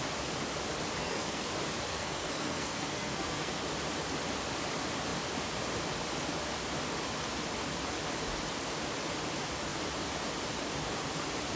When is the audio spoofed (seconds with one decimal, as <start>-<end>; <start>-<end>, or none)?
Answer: 1.0-1.5; 1.9-3.6